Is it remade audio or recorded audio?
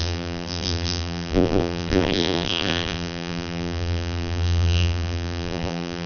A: remade